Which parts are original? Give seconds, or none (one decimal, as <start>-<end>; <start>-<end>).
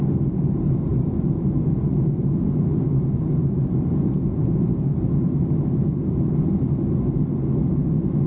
0.0-0.9; 4.8-8.3